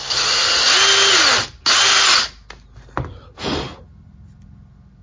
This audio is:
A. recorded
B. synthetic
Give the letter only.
A